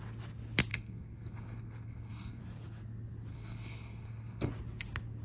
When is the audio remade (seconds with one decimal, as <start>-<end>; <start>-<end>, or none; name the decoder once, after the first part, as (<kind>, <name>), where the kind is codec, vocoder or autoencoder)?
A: 0.7-2.4 (codec, SNAC); 3.3-4.5